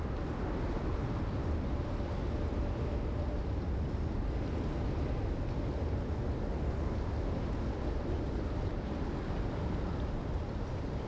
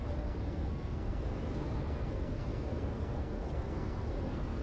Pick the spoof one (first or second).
second